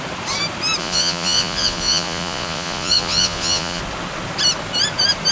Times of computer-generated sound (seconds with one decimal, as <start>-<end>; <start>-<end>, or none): 0.8-3.8